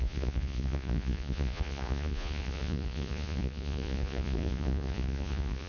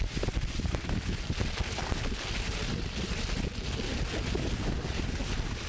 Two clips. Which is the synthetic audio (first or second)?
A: first